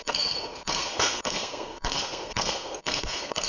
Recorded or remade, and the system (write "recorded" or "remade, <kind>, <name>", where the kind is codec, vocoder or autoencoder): remade, codec, SNAC